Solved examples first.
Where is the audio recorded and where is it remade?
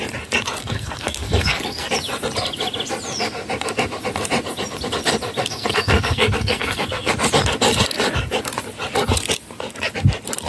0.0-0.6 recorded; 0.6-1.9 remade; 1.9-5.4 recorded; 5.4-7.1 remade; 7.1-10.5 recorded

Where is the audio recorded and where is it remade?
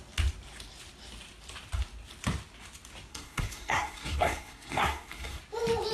0.0-3.1 recorded; 3.1-5.4 remade; 5.4-5.9 recorded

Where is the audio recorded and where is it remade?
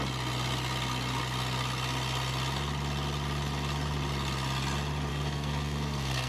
0.0-5.1 recorded; 5.1-6.3 remade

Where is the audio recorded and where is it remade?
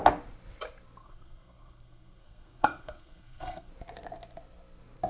0.0-1.0 recorded; 1.0-3.7 remade; 3.7-5.1 recorded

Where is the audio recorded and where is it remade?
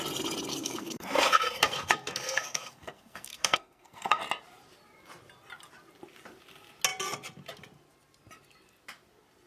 0.0-0.5 recorded; 0.5-4.2 remade; 4.2-9.5 recorded